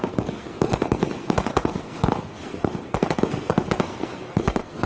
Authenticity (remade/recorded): remade